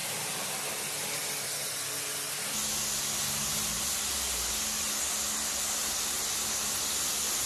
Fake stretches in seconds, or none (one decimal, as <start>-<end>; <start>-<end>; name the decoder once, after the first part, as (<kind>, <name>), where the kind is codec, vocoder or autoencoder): none